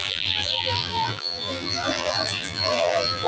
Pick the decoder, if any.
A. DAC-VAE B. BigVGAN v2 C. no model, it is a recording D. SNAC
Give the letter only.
B